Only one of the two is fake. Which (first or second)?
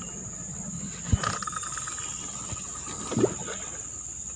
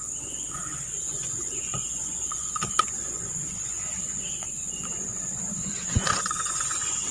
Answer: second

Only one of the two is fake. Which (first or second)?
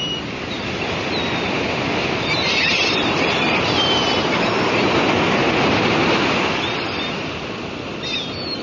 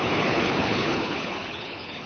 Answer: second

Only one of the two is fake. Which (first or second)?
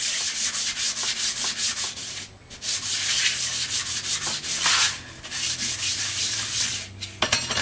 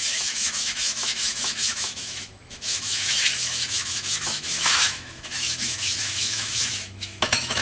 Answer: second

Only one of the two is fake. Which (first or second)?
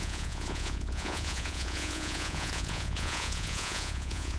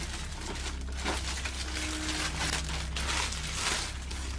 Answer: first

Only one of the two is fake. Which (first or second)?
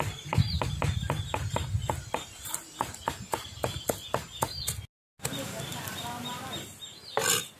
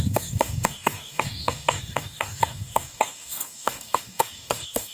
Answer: second